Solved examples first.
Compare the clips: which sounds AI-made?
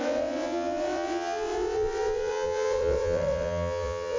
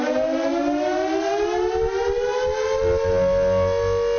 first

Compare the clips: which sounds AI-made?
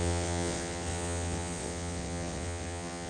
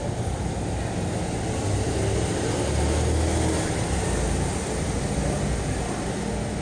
first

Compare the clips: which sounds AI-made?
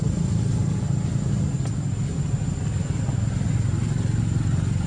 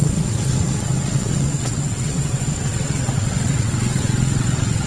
second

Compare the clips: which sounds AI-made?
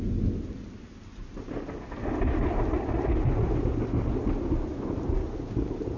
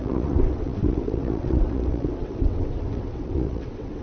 second